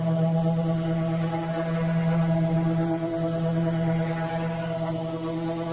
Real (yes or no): yes